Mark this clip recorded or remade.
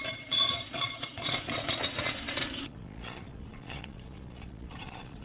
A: remade